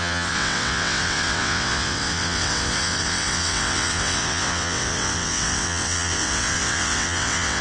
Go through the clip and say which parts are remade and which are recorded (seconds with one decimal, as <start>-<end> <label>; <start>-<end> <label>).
0.0-7.6 remade